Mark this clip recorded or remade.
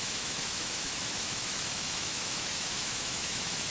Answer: remade